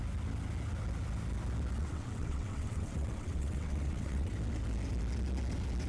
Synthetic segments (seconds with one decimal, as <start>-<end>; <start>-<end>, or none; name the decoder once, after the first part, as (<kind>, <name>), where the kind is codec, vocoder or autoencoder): 1.8-4.3 (vocoder, WaveNeXt)